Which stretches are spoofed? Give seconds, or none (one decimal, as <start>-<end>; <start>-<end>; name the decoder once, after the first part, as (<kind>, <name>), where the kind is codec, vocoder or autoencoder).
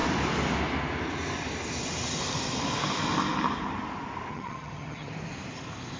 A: 4.3-5.1 (vocoder, HiFi-GAN)